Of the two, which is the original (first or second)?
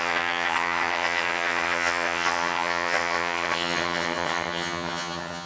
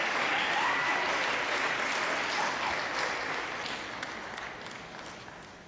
second